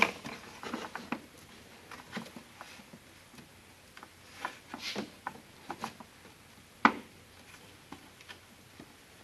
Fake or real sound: real